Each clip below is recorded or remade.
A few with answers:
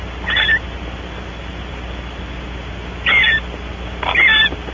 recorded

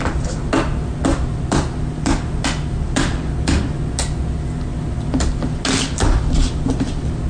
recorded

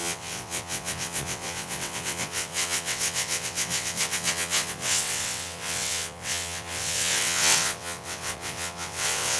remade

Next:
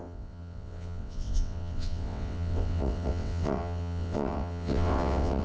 remade